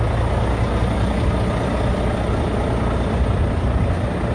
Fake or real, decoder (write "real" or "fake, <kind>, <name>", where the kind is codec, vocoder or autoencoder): real